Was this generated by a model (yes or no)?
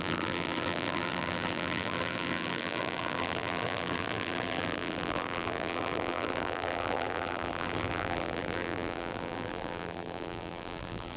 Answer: yes